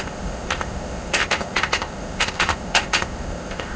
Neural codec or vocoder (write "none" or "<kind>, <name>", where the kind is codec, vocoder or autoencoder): codec, ZipCodec